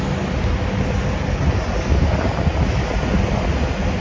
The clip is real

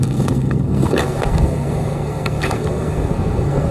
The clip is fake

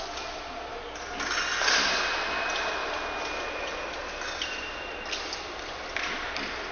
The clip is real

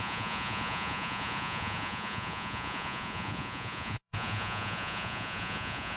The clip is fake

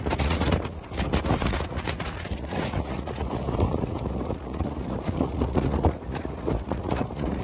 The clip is fake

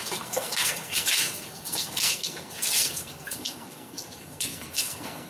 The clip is fake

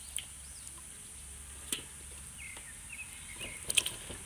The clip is real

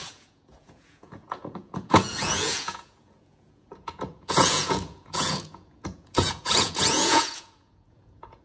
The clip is fake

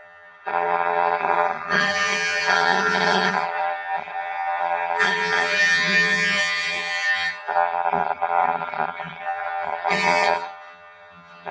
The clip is fake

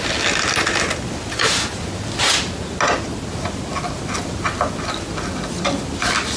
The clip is real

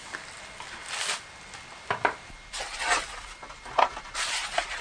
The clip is real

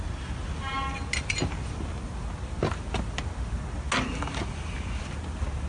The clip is real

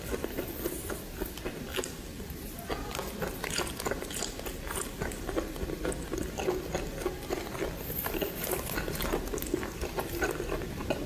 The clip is real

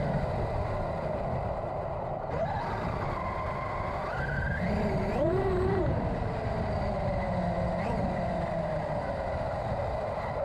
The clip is real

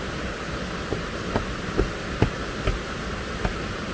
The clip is real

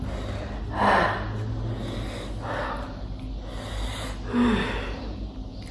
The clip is real